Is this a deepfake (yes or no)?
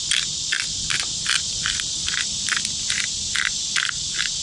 no